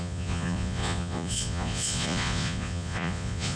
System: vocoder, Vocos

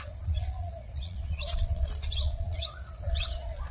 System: vocoder, Vocos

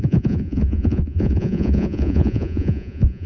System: vocoder, Vocos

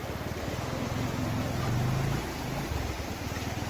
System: none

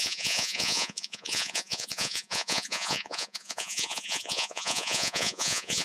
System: vocoder, Vocos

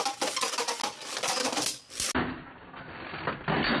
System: none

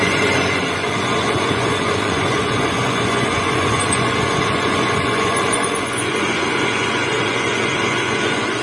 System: vocoder, Vocos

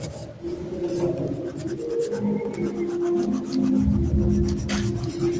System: none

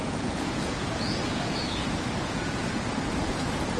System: vocoder, Vocos